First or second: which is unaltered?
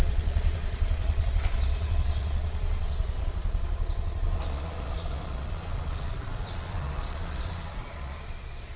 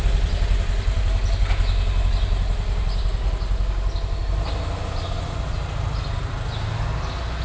second